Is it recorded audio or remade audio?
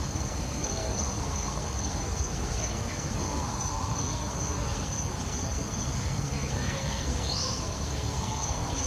remade